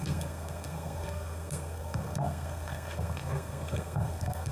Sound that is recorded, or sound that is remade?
remade